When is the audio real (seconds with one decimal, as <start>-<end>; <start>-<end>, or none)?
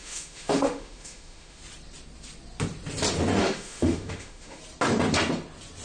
1.6-3.4; 4.6-5.8